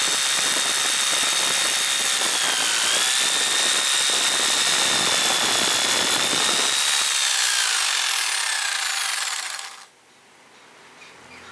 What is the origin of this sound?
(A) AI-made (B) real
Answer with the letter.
B